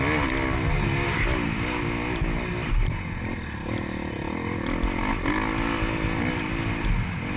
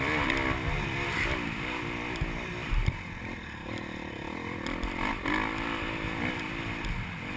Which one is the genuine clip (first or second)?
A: first